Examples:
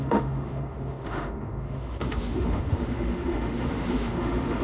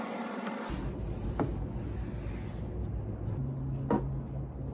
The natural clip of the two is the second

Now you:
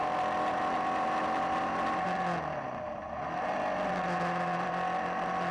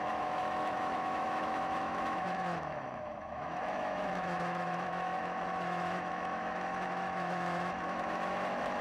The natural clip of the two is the first